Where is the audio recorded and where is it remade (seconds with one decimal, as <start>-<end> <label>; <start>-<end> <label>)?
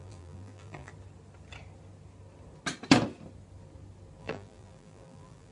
0.0-0.9 remade; 0.9-4.2 recorded; 4.2-5.5 remade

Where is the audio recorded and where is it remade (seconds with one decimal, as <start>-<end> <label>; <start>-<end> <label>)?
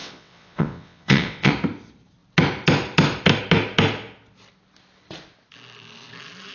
0.0-1.5 remade; 1.5-6.5 recorded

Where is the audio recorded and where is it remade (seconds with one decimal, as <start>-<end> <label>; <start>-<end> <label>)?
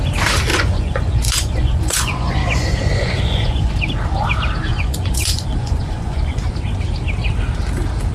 0.0-0.5 recorded; 0.5-3.7 remade; 3.7-4.7 recorded; 4.7-6.5 remade; 6.5-8.1 recorded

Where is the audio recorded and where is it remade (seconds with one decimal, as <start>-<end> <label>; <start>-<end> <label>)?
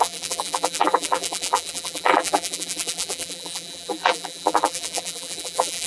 0.0-5.9 remade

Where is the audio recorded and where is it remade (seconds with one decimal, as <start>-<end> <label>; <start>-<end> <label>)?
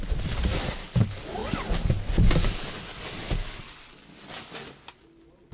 0.0-5.5 recorded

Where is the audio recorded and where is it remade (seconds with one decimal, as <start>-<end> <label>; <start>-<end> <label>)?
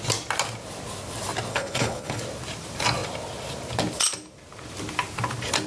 0.0-1.5 recorded; 1.5-2.2 remade; 2.2-5.7 recorded